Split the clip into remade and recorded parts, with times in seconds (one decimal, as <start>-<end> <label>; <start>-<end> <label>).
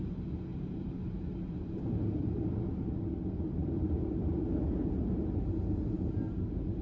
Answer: 0.0-0.5 recorded; 0.5-1.8 remade; 1.8-3.6 recorded; 3.6-6.8 remade